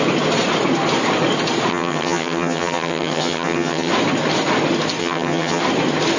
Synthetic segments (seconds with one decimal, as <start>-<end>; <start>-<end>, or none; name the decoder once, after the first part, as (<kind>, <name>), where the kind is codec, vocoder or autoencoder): 1.7-3.9 (vocoder, HiFi-GAN); 5.0-5.6